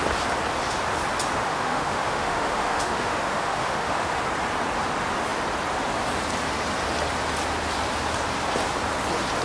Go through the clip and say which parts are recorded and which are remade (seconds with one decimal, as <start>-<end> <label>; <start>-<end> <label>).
0.0-1.5 recorded; 1.5-4.2 remade; 4.2-9.4 recorded